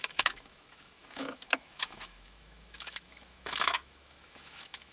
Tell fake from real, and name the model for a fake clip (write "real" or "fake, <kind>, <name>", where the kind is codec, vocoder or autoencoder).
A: fake, autoencoder, DAC-VAE